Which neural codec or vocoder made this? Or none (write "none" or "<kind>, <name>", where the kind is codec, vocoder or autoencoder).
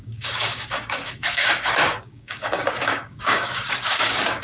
codec, DAC